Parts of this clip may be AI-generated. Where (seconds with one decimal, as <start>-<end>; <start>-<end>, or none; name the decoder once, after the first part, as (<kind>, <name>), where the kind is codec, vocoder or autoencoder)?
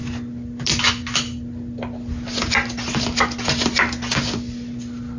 none